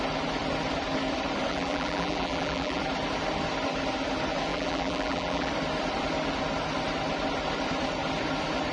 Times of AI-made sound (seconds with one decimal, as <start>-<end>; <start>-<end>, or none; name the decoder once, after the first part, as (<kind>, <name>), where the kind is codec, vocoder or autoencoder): 1.5-2.8 (vocoder, BigVGAN v2); 4.5-5.5